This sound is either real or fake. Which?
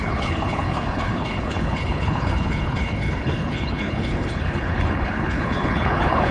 fake